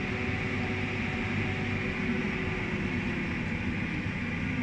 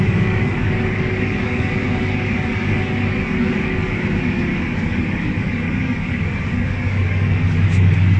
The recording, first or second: first